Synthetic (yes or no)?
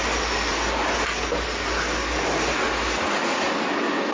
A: no